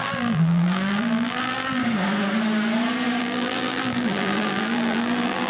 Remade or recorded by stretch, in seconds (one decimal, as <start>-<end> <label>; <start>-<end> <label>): 0.0-1.8 remade; 1.8-3.2 recorded; 3.2-5.5 remade